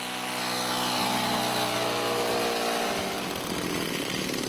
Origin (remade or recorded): recorded